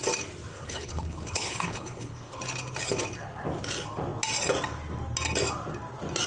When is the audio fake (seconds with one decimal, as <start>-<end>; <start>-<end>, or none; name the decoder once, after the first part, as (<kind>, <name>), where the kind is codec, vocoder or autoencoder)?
0.5-2.4 (codec, HILCodec)